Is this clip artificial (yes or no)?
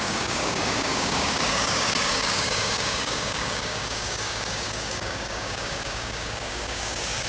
yes